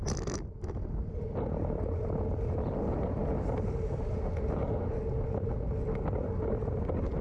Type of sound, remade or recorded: recorded